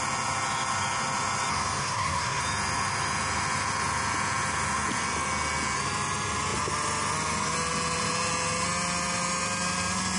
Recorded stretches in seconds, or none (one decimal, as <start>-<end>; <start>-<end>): 0.0-1.8; 2.4-10.2